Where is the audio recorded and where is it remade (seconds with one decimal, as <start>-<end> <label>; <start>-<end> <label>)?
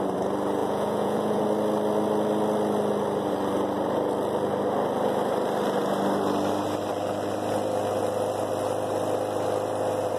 0.0-0.6 recorded; 0.6-1.4 remade; 1.4-10.2 recorded